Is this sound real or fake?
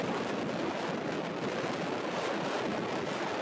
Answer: real